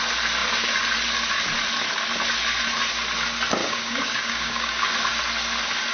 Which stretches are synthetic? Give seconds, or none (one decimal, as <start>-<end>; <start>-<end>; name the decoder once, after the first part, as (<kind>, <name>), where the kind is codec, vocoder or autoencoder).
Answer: 3.6-4.9 (codec, DAC)